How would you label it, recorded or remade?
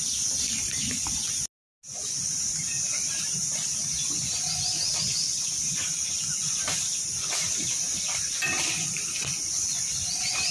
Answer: recorded